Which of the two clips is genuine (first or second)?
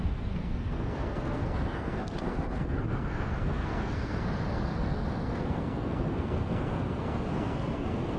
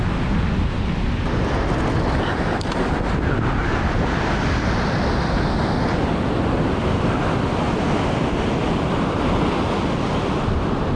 second